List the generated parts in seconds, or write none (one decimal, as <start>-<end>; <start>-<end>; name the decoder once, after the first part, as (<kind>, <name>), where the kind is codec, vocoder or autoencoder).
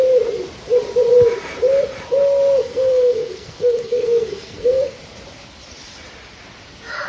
2.6-5.0 (codec, SNAC)